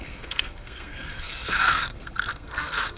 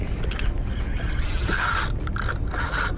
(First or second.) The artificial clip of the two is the first